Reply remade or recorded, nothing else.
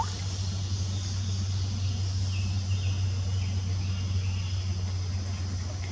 recorded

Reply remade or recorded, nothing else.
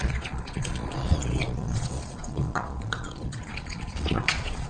remade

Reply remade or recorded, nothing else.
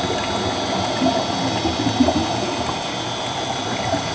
recorded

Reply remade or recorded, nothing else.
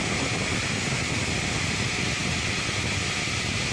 recorded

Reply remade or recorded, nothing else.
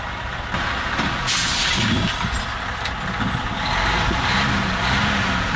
recorded